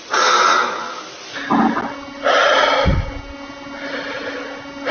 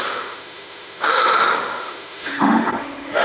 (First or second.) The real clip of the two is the first